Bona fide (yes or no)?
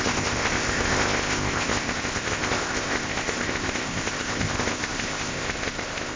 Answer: no